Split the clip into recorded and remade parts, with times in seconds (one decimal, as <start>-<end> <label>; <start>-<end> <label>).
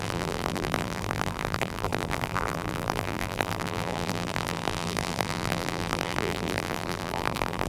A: 0.0-7.7 remade